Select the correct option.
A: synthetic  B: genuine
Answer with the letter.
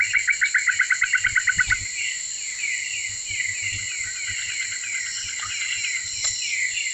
B